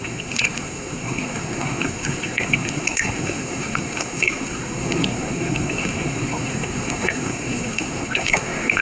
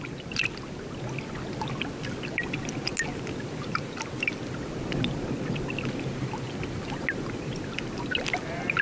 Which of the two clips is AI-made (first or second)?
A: first